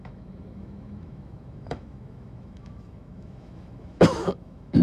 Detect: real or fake fake